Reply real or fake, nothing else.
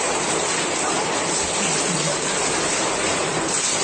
real